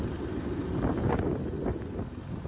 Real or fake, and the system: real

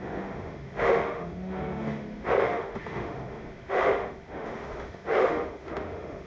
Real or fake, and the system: fake, autoencoder, DAC-VAE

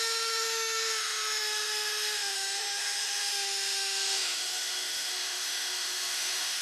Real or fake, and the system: fake, autoencoder, DAC-VAE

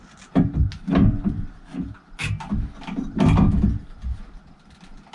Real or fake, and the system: real